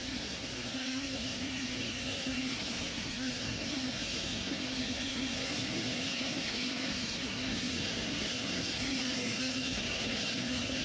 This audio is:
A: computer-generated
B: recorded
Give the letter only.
A